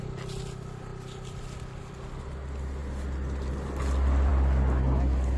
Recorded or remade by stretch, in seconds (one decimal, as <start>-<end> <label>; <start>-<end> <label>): 0.0-5.4 recorded